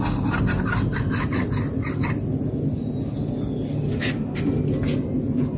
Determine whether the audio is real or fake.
real